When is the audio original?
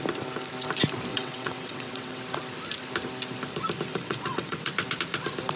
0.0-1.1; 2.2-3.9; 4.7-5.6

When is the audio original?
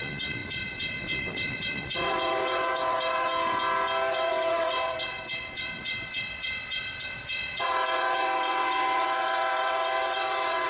3.3-4.1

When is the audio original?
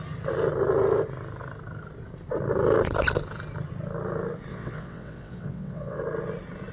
0.0-4.5; 6.0-6.7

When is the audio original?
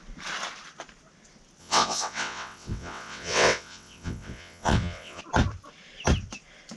0.0-1.6; 5.2-6.8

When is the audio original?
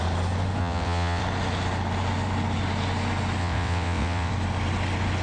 0.0-0.6; 1.2-3.4; 4.3-5.2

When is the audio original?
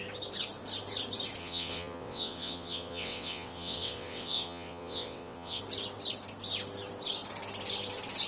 0.0-1.4; 5.6-8.3